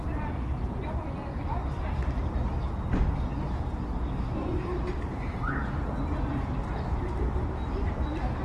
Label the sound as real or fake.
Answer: real